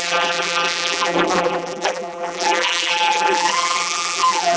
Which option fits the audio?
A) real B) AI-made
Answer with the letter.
B